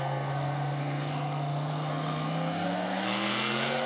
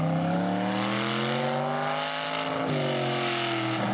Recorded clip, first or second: second